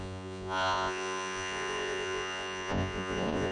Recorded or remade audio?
remade